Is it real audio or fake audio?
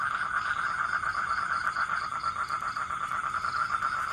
real